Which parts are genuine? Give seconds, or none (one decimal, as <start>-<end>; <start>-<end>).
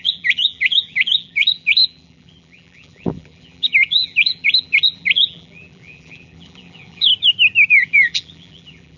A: 7.1-7.7